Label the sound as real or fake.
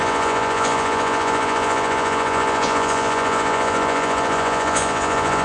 fake